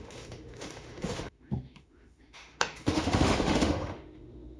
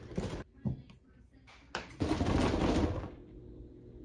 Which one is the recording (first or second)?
second